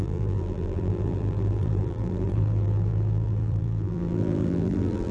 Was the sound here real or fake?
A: fake